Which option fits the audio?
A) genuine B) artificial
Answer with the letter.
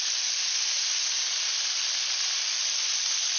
A